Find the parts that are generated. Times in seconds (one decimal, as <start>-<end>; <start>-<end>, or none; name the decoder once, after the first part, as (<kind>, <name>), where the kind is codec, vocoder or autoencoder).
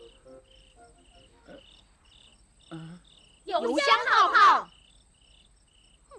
0.0-2.3 (vocoder, BigVGAN v2)